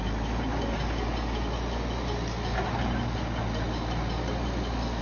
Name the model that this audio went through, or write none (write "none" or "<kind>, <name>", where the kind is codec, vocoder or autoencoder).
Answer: none